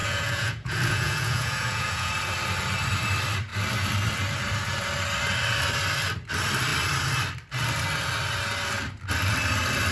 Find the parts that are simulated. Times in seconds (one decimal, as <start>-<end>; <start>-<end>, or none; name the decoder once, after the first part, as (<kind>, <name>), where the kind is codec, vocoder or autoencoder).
0.0-2.1 (vocoder, Vocos)